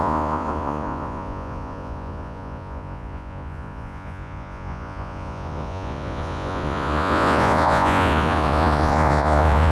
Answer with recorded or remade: remade